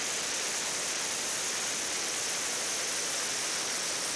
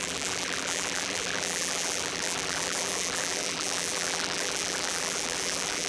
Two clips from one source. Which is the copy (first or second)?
second